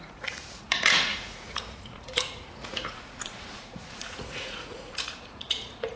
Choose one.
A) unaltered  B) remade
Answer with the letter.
B